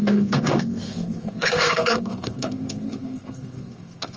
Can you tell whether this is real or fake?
fake